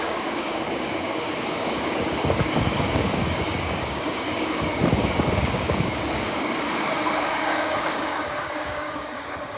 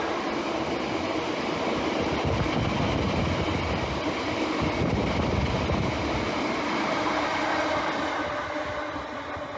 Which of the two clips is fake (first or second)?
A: first